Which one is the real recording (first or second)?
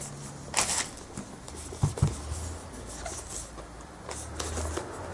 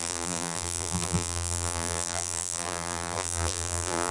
first